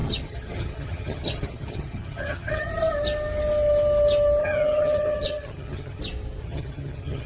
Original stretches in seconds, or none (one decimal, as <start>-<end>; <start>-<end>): 2.7-4.4; 6.0-6.4